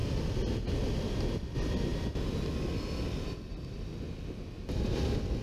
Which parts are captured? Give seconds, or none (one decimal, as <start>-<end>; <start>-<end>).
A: 1.9-4.7